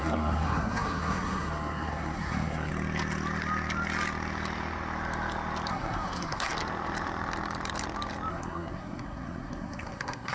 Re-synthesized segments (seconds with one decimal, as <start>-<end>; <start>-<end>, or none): 0.0-2.7; 5.7-6.5; 8.3-10.3